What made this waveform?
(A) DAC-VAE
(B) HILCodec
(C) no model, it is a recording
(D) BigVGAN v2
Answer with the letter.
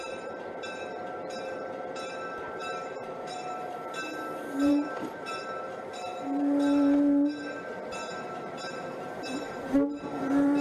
D